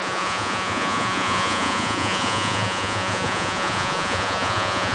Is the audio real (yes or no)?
no